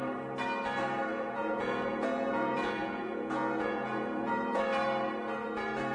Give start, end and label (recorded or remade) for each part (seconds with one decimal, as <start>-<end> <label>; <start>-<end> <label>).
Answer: 0.0-1.1 recorded; 1.1-4.6 remade; 4.6-5.9 recorded